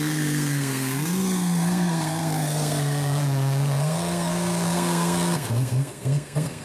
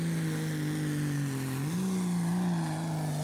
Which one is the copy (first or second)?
first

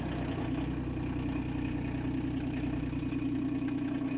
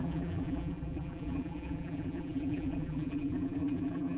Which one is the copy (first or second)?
second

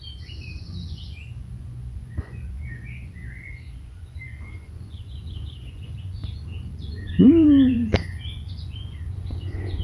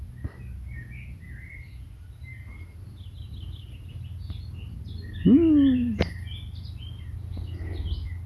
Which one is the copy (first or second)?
first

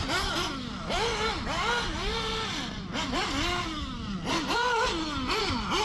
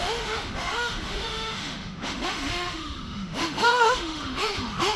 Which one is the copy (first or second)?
second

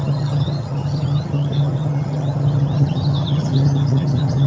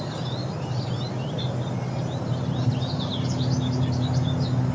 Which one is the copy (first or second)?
first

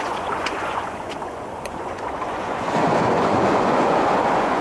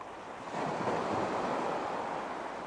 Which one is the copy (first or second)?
first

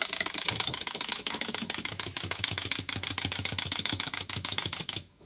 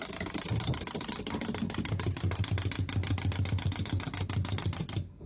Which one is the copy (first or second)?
first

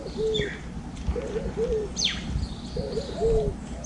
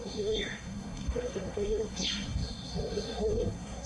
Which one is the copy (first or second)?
second